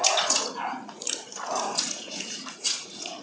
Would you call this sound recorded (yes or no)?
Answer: no